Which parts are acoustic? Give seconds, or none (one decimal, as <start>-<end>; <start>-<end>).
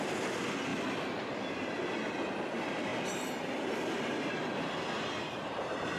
0.0-6.0